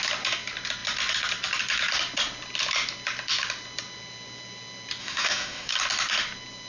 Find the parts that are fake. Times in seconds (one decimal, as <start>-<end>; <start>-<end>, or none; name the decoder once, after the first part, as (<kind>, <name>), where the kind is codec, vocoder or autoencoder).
5.0-5.7 (autoencoder, DAC-VAE)